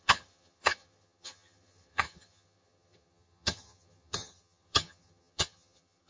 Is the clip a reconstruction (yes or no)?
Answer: yes